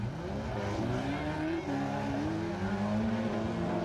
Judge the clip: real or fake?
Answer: real